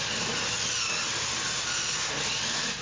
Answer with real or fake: real